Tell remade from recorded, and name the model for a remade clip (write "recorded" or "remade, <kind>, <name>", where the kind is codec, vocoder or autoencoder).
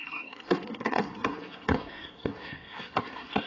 remade, codec, SNAC